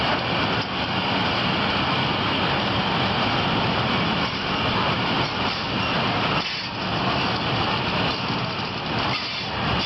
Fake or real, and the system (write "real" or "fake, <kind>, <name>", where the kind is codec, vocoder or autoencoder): real